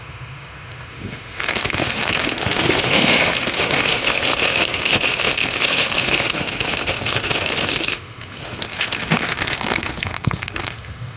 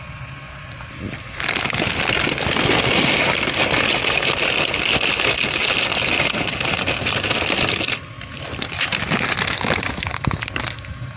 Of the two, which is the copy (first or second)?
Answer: first